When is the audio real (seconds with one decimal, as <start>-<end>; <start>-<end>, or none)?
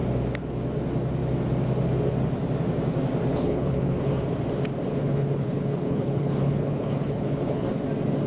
0.0-3.3; 4.1-4.9; 7.7-8.3